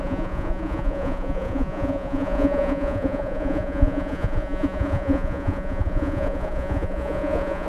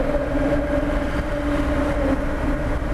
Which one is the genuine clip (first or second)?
second